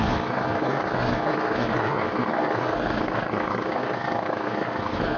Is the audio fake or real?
fake